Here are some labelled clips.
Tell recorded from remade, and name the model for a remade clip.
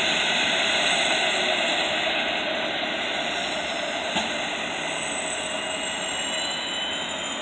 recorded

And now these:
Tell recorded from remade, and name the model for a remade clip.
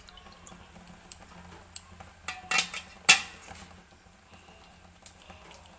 recorded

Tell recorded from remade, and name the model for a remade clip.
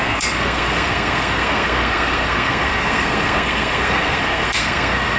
remade, codec, SNAC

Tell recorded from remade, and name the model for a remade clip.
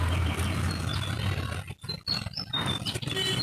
recorded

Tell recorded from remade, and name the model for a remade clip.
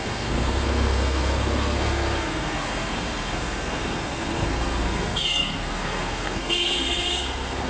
remade, codec, SNAC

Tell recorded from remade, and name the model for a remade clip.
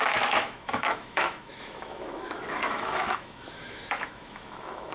remade, autoencoder, DAC-VAE